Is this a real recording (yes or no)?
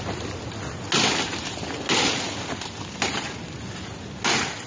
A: yes